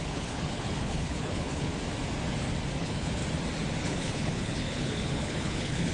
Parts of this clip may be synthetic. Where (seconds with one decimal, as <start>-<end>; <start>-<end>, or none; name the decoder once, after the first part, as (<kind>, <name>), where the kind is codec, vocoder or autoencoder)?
0.0-1.7 (codec, HILCodec); 2.7-3.2; 3.8-5.9